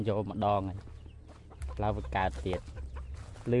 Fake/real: real